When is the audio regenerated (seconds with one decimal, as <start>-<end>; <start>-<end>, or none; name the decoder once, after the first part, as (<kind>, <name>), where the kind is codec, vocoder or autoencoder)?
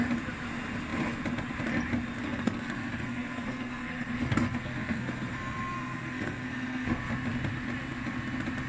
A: 2.2-7.1 (codec, SNAC)